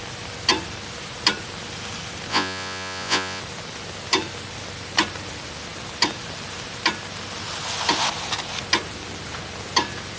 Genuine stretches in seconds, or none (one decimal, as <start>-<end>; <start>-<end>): 0.0-2.3; 3.4-10.2